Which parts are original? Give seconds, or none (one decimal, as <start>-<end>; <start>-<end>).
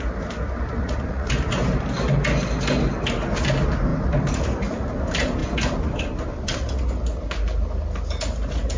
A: 0.0-0.8; 1.3-8.8